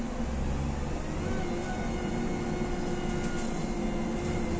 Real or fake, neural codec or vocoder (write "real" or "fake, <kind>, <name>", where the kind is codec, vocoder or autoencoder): real